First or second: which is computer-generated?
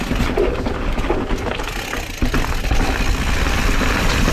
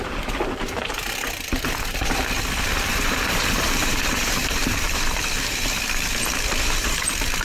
second